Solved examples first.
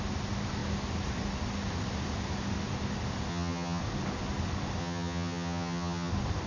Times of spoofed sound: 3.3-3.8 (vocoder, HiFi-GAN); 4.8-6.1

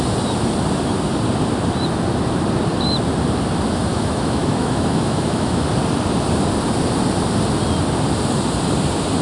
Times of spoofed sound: 3.9-5.7 (autoencoder, DAC-VAE)

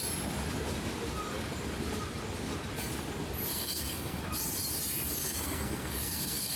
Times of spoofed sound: 3.5-4.2 (codec, SNAC); 5.2-6.6

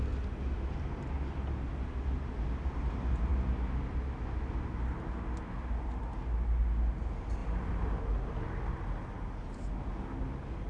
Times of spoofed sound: 3.3-4.1 (vocoder, BigVGAN v2); 7.4-8.0